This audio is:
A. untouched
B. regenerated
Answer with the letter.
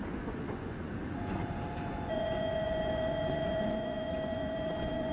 B